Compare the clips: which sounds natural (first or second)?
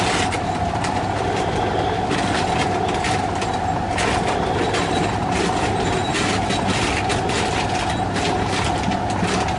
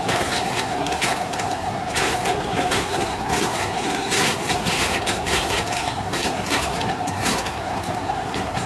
first